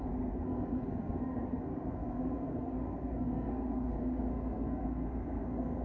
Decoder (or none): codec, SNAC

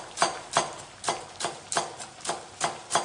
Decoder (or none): none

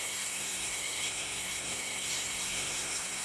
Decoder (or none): codec, SNAC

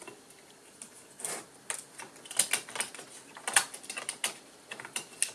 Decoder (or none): none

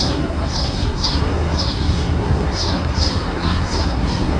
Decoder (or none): codec, SNAC